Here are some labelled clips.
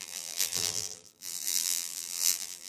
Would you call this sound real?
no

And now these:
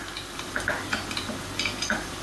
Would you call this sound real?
yes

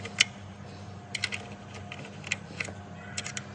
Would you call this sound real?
yes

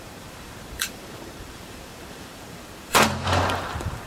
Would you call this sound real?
no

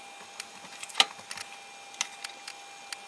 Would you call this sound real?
yes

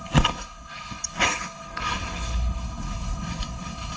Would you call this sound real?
no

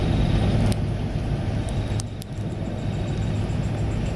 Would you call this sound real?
yes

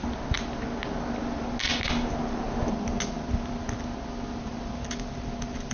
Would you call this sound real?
yes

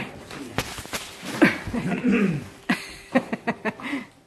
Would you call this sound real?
yes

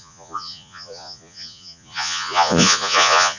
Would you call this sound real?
no